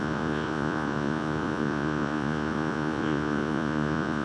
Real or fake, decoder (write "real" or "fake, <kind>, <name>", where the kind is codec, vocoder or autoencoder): fake, vocoder, Vocos